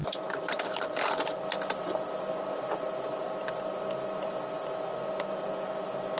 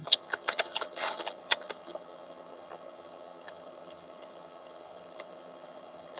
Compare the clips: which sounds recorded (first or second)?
first